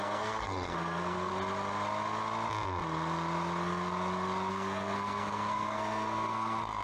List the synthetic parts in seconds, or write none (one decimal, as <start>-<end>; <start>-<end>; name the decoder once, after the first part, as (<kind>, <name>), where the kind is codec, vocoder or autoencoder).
0.0-1.3 (codec, SNAC); 4.5-6.8